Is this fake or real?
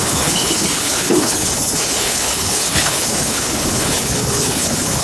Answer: fake